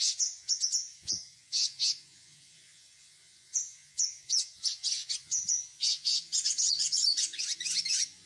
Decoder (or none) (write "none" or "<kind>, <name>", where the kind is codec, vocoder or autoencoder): vocoder, Vocos